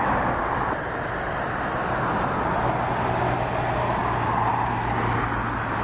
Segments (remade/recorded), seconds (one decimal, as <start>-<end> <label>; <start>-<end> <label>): 0.0-5.8 recorded